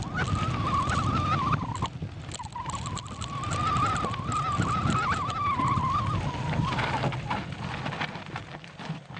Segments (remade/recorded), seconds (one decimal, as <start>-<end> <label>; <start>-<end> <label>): 0.0-9.2 recorded